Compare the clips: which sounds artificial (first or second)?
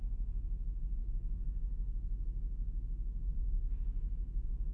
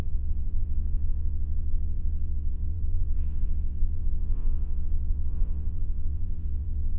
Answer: second